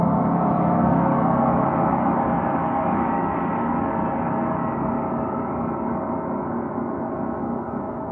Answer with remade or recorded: remade